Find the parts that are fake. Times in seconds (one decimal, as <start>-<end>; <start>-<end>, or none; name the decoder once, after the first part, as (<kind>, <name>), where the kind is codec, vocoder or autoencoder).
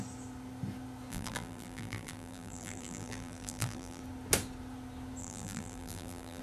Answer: 1.1-4.0 (vocoder, BigVGAN v2); 5.2-6.4